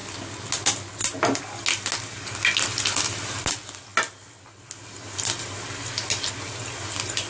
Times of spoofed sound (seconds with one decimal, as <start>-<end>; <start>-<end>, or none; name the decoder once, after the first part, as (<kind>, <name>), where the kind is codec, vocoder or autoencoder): none